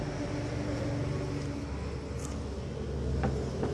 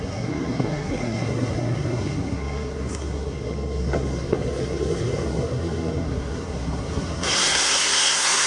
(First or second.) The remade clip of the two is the second